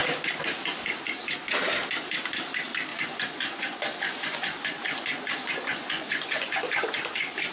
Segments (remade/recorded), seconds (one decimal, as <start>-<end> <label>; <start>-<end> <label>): 0.0-2.9 recorded; 2.9-7.5 remade